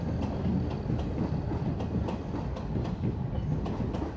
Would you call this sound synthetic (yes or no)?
no